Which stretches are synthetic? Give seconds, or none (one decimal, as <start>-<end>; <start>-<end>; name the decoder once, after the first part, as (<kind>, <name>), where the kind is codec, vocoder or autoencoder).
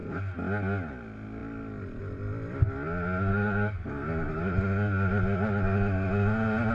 3.3-4.4 (codec, DAC)